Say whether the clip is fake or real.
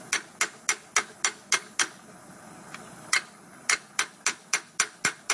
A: real